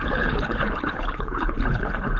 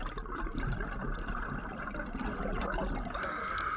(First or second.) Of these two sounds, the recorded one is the second